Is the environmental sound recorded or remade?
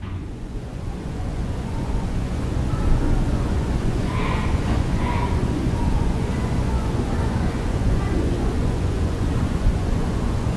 remade